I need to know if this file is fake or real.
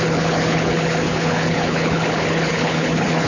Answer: fake